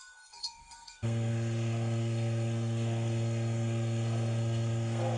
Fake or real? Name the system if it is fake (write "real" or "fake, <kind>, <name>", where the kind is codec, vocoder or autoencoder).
fake, codec, SNAC